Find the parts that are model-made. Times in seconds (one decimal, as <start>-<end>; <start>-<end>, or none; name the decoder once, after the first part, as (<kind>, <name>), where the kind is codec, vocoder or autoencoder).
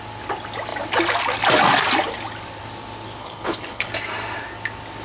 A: 3.2-3.9 (codec, HILCodec)